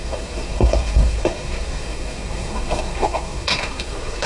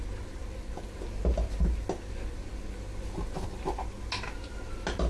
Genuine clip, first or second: second